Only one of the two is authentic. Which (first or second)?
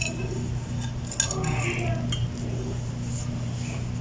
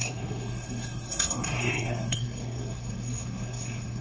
first